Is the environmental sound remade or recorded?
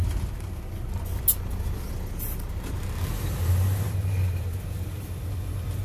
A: recorded